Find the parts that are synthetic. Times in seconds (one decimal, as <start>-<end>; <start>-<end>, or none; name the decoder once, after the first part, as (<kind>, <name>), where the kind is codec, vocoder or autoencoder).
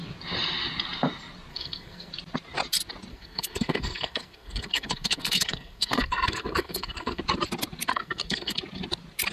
1.5-2.1 (codec, SNAC); 3.1-7.2; 7.9-8.6